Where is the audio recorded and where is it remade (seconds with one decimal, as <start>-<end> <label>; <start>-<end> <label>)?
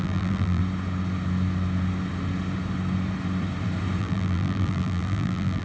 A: 0.0-0.6 remade; 0.6-4.0 recorded; 4.0-5.6 remade